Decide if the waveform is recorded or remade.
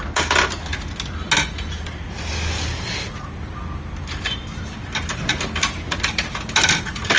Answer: recorded